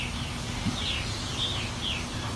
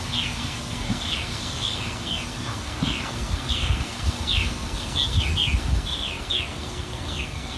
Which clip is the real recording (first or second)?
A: first